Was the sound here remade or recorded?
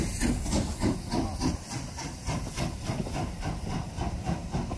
recorded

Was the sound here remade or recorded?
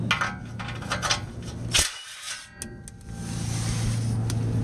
recorded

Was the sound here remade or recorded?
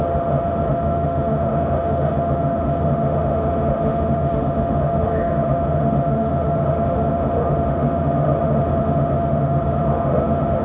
remade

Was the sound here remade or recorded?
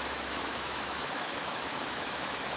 remade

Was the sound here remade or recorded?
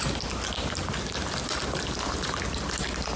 recorded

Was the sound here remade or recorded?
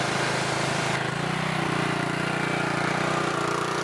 recorded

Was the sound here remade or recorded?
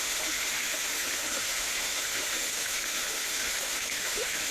remade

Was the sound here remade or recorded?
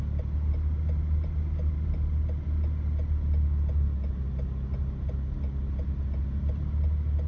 recorded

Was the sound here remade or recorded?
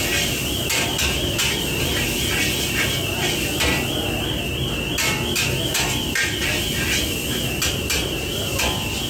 recorded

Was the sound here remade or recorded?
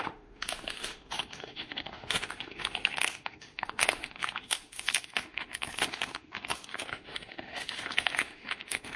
remade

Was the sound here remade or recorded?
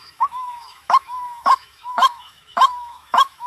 remade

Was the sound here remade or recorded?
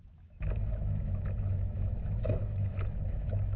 remade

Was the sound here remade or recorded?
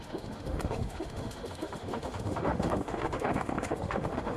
remade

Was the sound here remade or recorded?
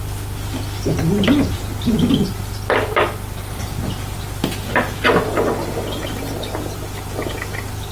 recorded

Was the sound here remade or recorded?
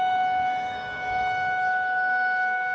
remade